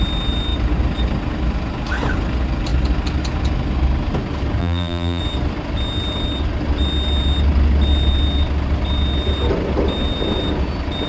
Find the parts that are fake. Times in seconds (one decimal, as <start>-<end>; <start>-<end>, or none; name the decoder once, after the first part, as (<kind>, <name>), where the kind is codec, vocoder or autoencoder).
4.6-5.2 (vocoder, BigVGAN v2)